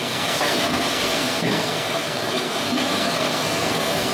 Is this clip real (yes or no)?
no